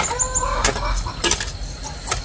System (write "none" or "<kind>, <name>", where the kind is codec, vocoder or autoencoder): none